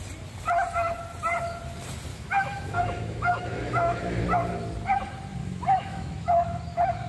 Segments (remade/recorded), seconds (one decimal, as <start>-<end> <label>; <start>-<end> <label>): 0.0-2.1 recorded; 2.1-4.2 remade; 4.2-5.4 recorded; 5.4-6.6 remade; 6.6-7.1 recorded

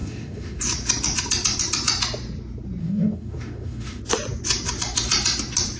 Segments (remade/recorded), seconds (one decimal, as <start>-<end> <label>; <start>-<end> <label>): 0.0-0.6 remade; 0.6-2.8 recorded; 2.8-4.0 remade; 4.0-5.8 recorded

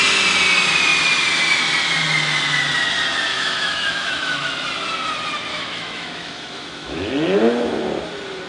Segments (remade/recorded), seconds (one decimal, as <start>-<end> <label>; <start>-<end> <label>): 0.0-3.3 recorded; 3.3-4.5 remade; 4.5-5.5 recorded; 5.5-7.1 remade; 7.1-8.5 recorded

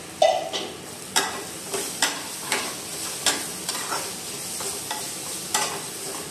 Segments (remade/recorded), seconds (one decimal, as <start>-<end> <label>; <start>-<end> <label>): 0.0-6.3 recorded